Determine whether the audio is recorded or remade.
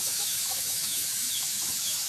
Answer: remade